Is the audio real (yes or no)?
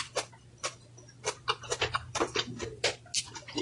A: yes